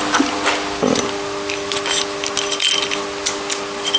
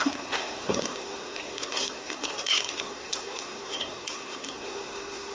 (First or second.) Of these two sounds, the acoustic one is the first